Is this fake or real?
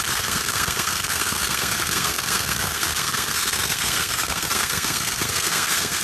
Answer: fake